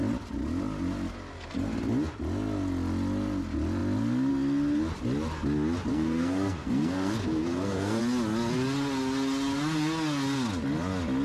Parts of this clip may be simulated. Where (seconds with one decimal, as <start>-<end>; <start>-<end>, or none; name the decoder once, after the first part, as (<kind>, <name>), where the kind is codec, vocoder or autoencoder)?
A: 5.9-8.0 (codec, SNAC)